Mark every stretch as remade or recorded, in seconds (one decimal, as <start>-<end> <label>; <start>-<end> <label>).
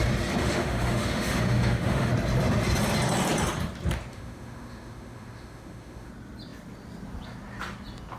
0.0-0.4 recorded; 0.4-2.1 remade; 2.1-4.1 recorded; 4.1-6.1 remade; 6.1-8.2 recorded